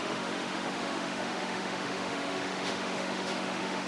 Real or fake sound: fake